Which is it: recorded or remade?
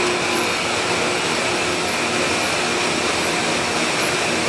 recorded